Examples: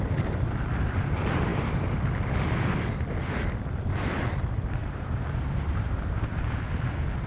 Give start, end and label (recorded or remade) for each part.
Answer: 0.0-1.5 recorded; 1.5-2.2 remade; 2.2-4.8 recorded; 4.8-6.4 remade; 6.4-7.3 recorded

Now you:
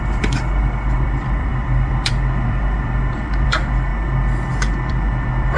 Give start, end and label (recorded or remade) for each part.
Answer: 0.0-3.9 remade; 3.9-4.9 recorded; 4.9-5.6 remade

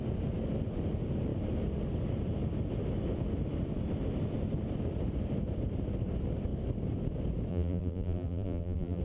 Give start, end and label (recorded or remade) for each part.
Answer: 0.0-7.5 recorded; 7.5-9.0 remade